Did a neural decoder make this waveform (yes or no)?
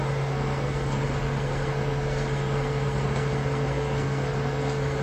yes